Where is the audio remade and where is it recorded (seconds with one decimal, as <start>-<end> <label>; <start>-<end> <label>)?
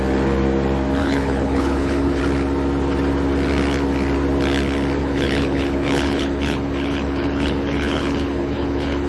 0.0-1.0 recorded; 1.0-2.2 remade; 2.2-5.0 recorded; 5.0-9.1 remade